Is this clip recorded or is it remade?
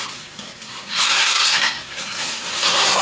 remade